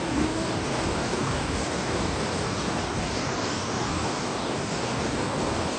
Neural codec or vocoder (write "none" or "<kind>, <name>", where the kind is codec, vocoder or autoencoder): codec, DAC